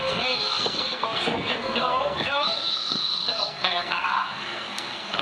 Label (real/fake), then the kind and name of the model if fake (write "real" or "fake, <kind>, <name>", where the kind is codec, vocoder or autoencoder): fake, codec, SNAC